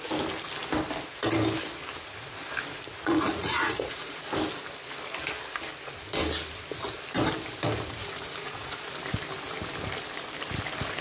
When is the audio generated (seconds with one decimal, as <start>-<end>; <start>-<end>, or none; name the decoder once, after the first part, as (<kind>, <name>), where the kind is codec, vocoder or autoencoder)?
2.9-4.3 (vocoder, Vocos); 8.0-8.9